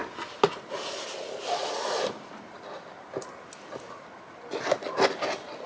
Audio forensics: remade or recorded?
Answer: recorded